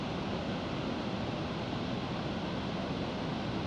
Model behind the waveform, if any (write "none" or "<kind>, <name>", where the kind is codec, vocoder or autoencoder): none